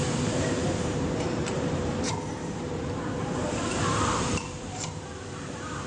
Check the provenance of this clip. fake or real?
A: fake